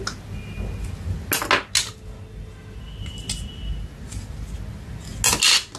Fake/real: real